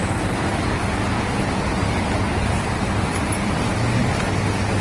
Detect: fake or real real